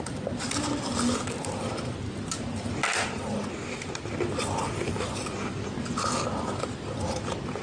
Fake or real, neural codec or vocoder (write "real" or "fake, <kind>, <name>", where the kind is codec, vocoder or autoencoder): real